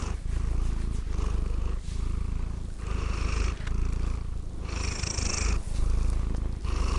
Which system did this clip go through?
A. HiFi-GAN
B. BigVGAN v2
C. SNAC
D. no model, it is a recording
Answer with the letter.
D